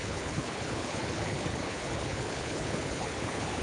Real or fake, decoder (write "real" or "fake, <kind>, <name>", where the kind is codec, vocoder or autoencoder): fake, codec, HILCodec